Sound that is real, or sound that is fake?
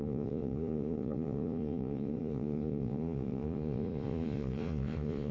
fake